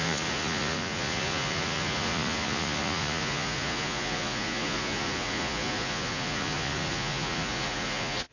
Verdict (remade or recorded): remade